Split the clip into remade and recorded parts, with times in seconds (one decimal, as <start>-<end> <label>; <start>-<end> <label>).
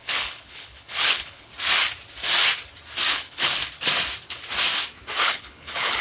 0.0-1.5 remade; 1.5-3.1 recorded; 3.1-3.6 remade; 3.6-5.2 recorded; 5.2-6.0 remade